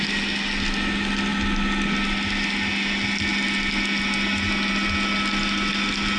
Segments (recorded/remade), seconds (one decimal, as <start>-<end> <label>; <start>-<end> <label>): 0.0-6.2 recorded